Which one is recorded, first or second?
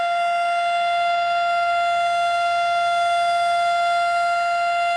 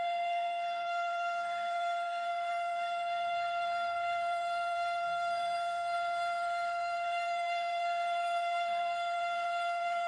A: first